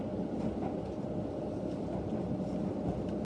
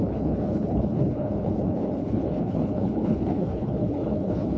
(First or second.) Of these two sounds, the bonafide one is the first